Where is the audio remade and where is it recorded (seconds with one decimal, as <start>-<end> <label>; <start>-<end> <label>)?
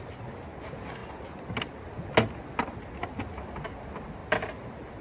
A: 0.0-5.0 recorded